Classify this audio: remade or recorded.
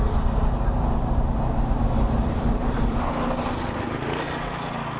recorded